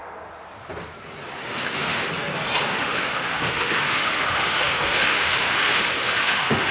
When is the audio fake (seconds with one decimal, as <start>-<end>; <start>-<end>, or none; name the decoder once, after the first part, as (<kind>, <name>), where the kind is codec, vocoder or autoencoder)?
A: 1.4-2.1 (autoencoder, DAC-VAE); 2.7-6.7